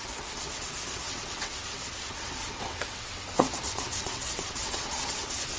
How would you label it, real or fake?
fake